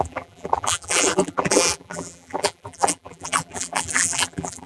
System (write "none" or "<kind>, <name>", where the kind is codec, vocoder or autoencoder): vocoder, BigVGAN v2